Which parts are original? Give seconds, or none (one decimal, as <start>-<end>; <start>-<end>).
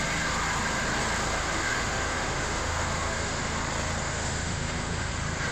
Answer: 0.0-1.4; 3.6-4.0; 5.1-5.5